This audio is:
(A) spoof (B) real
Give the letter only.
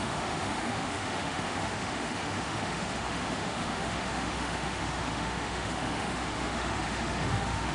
A